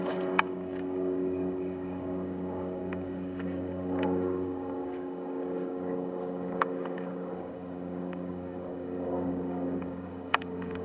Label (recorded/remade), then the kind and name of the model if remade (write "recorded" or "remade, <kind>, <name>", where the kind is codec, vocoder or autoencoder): remade, codec, DAC